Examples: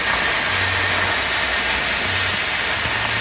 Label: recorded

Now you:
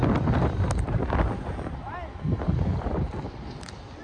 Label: recorded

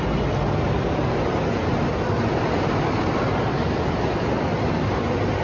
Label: recorded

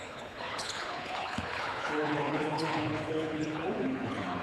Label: remade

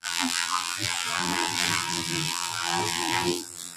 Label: remade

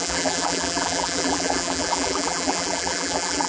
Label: remade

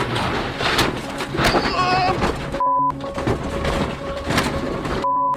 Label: recorded